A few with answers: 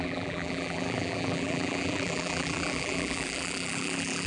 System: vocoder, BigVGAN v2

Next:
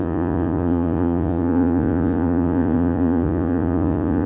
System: vocoder, Vocos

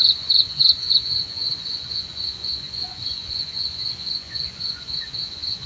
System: vocoder, Vocos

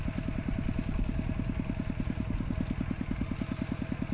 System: none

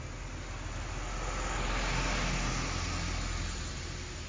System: none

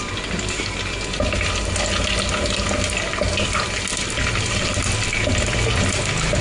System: none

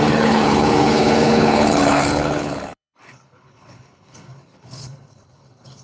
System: codec, HILCodec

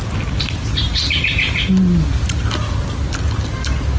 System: none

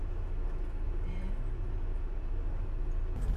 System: none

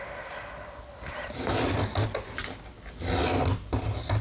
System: none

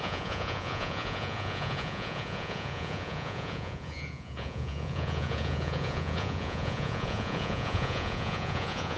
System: vocoder, Vocos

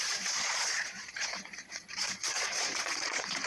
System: vocoder, Vocos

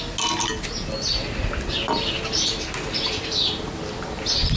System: none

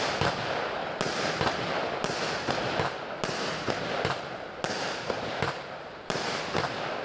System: none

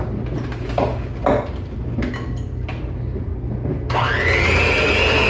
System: none